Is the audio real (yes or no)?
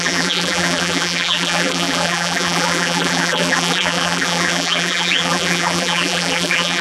no